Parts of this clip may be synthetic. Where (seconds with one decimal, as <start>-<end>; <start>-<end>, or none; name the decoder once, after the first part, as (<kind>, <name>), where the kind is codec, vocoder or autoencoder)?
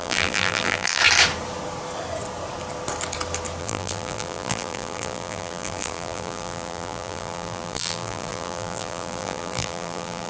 0.0-1.0 (vocoder, BigVGAN v2); 3.6-10.3